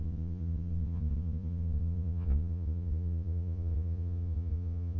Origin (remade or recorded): remade